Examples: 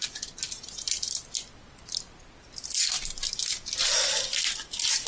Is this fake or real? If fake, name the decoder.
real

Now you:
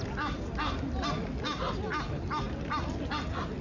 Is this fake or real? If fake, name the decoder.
real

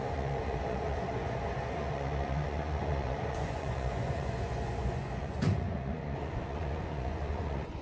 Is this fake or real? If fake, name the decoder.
fake, vocoder, Vocos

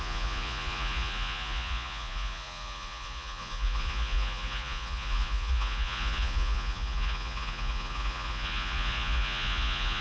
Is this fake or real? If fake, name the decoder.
fake, vocoder, Vocos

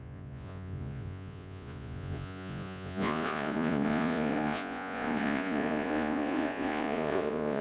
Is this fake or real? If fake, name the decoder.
fake, vocoder, Vocos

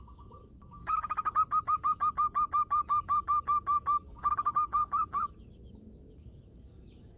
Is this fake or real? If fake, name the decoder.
fake, codec, DAC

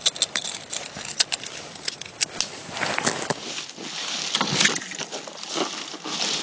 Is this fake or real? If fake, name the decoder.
real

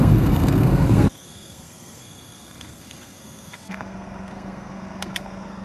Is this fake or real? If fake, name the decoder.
fake, codec, SNAC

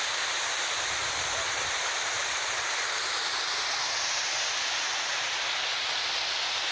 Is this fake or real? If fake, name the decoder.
real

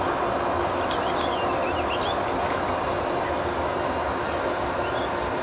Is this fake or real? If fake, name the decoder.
real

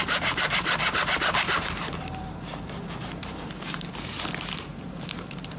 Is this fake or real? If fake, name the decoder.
fake, vocoder, BigVGAN v2